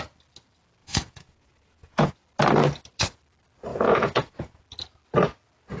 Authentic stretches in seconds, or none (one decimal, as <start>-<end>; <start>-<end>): 0.0-0.8; 2.1-3.7; 4.6-5.8